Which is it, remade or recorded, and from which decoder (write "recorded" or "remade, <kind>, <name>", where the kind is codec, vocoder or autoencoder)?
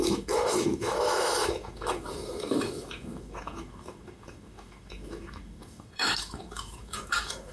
remade, autoencoder, DAC-VAE